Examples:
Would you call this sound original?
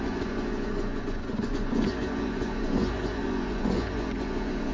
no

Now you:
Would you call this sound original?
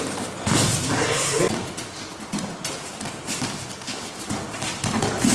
yes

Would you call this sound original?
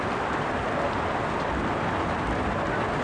yes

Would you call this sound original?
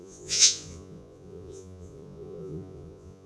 no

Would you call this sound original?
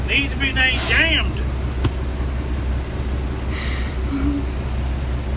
yes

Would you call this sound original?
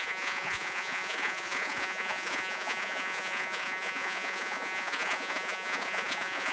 no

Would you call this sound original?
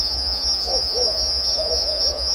no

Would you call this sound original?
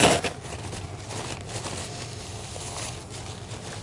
yes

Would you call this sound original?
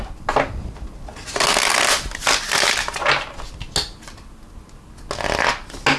yes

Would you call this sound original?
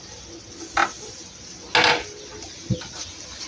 yes